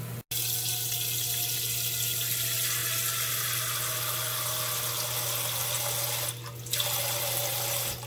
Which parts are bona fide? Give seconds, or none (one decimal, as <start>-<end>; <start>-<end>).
0.0-8.1